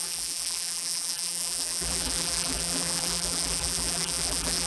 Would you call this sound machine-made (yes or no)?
yes